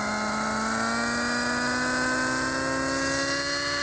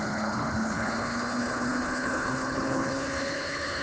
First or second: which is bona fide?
first